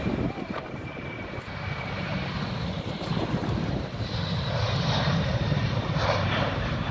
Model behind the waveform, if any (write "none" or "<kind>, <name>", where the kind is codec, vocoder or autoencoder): vocoder, BigVGAN v2